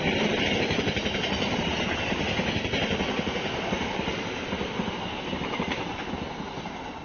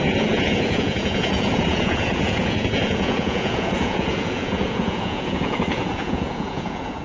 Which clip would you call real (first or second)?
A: first